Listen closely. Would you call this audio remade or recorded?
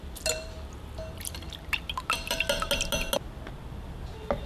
recorded